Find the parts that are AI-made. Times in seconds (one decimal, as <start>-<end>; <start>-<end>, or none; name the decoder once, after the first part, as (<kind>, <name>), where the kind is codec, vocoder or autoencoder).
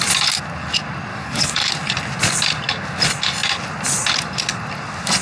1.1-1.7 (codec, DAC)